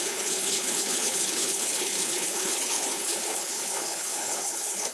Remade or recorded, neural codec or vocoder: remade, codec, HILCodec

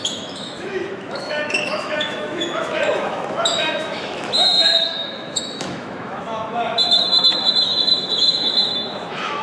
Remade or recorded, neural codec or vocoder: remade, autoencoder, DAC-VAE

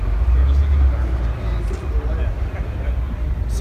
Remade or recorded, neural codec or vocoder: recorded